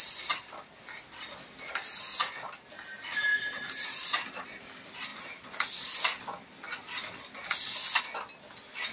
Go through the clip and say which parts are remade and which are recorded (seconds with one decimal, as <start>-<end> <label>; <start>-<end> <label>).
0.0-3.3 recorded; 3.3-4.4 remade; 4.4-8.9 recorded